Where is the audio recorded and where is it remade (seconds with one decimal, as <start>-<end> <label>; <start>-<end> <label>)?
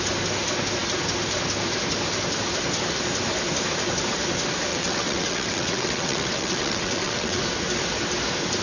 0.0-4.7 recorded; 4.7-7.4 remade; 7.4-8.6 recorded